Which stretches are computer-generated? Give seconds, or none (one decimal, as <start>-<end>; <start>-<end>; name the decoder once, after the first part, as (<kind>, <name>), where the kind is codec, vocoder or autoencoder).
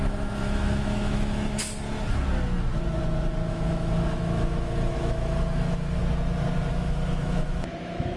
0.0-1.6 (autoencoder, DAC-VAE); 3.5-6.0; 6.7-8.2